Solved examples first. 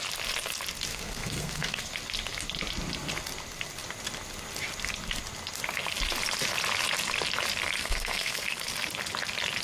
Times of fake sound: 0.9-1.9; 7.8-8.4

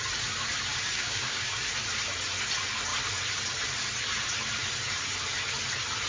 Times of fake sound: 0.7-1.6

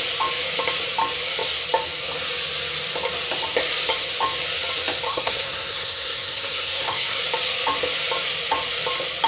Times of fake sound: 5.1-7.2

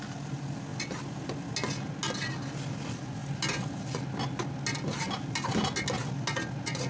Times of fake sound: none

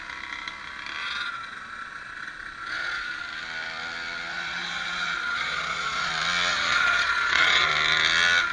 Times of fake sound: 1.0-3.2; 4.3-6.1; 6.5-7.7

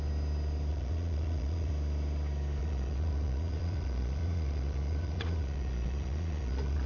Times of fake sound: 0.7-1.7; 2.6-6.9

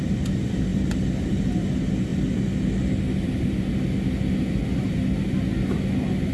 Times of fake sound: none

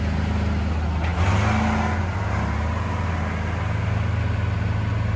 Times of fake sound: none